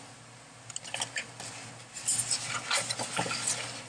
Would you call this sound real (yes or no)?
yes